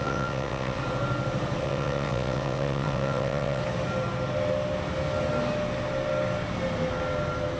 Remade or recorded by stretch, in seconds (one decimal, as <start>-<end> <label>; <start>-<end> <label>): 0.0-0.8 remade; 0.8-1.6 recorded; 1.6-3.6 remade; 3.6-7.6 recorded